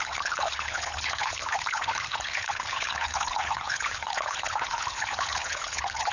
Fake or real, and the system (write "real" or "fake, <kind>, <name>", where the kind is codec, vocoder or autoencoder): fake, codec, HILCodec